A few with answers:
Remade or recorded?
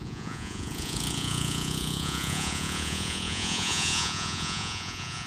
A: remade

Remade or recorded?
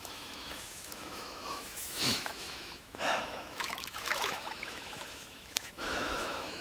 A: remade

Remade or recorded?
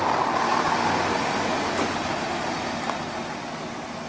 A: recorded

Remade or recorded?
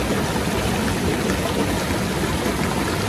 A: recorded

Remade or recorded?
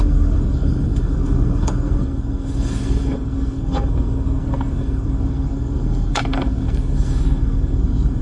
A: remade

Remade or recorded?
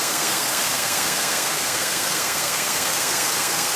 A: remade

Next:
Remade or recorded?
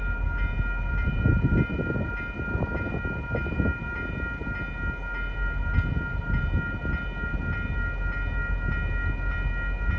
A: recorded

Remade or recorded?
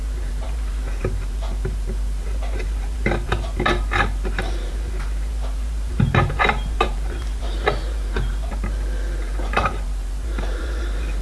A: remade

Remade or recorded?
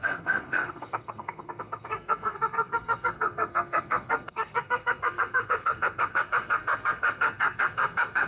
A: remade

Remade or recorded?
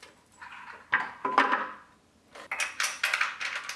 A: recorded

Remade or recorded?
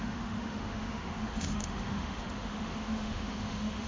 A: remade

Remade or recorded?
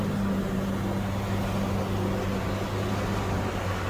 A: recorded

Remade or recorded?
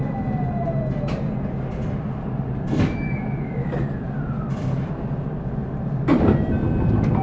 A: recorded